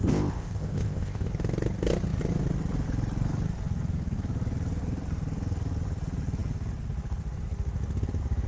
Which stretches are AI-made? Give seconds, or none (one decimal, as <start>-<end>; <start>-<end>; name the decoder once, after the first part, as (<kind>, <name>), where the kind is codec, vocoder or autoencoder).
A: 0.0-1.3 (codec, ZipCodec)